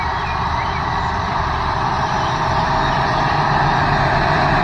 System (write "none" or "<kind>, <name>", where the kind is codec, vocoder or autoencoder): vocoder, BigVGAN v2